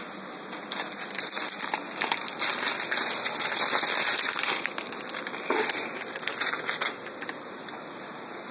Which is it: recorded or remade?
remade